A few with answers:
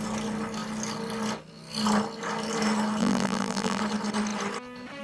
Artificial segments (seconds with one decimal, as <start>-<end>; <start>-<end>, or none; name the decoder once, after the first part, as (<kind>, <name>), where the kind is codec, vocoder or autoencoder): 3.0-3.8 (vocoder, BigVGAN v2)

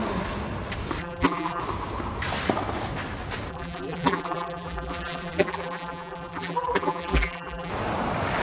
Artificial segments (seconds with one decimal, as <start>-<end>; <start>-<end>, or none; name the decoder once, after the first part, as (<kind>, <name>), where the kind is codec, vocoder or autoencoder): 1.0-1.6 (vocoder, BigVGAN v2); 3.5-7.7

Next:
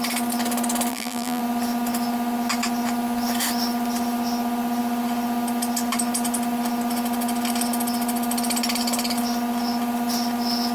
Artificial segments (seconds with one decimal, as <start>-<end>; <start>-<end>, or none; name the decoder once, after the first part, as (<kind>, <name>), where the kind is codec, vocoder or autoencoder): 0.9-1.4 (vocoder, BigVGAN v2)

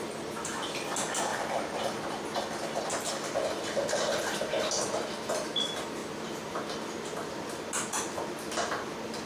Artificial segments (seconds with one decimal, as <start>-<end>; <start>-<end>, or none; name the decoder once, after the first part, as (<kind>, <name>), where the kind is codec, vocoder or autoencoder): none

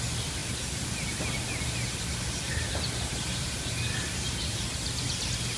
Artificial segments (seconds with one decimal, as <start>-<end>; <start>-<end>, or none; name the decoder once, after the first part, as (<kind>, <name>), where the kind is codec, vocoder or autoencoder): 3.1-5.1 (vocoder, BigVGAN v2)